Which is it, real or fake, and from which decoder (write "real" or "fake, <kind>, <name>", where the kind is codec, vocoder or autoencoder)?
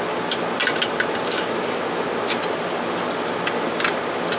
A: real